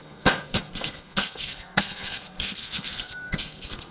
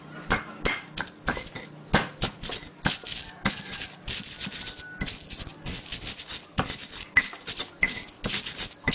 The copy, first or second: first